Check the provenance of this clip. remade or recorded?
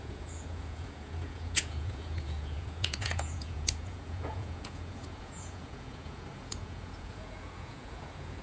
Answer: remade